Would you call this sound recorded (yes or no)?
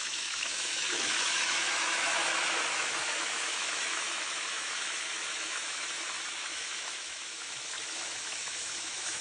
no